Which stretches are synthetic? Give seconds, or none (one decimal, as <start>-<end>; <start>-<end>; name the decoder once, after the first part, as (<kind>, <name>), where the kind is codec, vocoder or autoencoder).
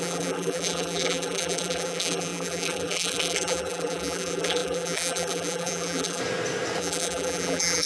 0.0-6.2 (vocoder, BigVGAN v2); 6.8-7.9